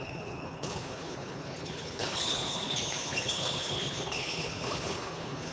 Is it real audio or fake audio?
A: fake